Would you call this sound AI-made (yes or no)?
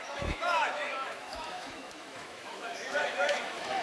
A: yes